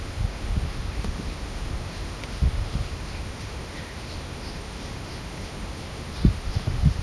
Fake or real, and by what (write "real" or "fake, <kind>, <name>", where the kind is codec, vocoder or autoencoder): fake, autoencoder, DAC-VAE